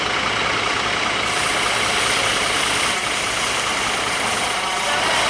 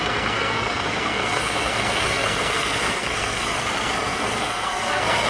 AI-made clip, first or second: second